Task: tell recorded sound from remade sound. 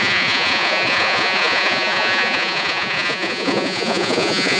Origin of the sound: remade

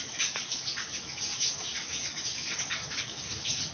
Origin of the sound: remade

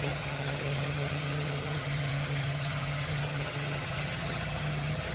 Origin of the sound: remade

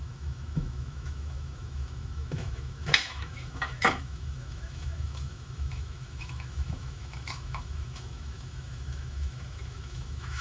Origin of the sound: remade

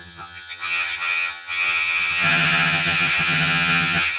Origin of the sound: remade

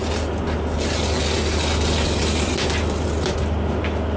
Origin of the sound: recorded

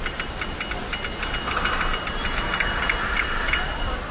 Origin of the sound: recorded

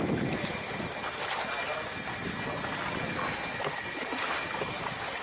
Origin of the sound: recorded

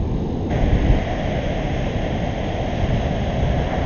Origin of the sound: recorded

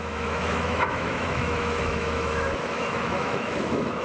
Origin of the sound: remade